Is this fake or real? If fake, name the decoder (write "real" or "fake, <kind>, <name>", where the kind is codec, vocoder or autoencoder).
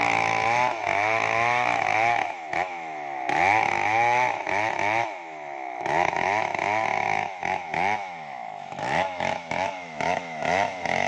fake, autoencoder, DAC-VAE